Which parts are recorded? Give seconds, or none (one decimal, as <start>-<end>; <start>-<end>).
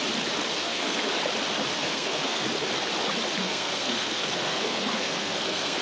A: 0.0-0.6; 1.1-1.7; 2.4-3.4